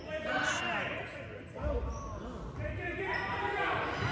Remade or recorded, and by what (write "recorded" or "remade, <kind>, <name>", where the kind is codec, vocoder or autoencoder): recorded